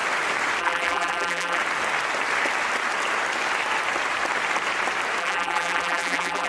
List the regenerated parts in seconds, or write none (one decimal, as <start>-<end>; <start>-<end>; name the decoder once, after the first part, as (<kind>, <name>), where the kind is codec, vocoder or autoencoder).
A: 0.6-1.6 (vocoder, BigVGAN v2); 5.2-6.5